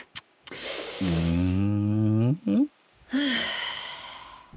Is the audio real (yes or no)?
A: no